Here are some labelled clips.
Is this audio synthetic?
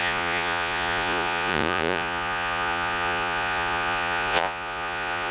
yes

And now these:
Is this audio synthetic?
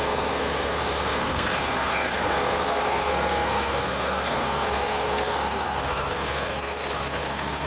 yes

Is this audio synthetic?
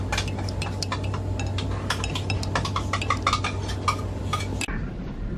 no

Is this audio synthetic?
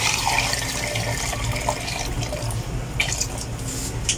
no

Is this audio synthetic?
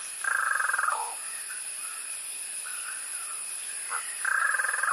yes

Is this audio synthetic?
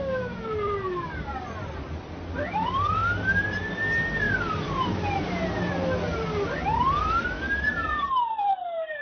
no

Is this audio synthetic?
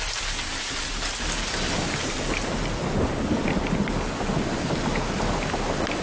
no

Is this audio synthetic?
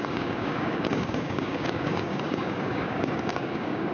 yes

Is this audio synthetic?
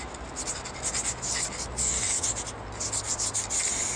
no